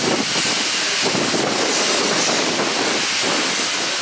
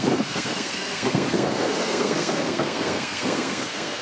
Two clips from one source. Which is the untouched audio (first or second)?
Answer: first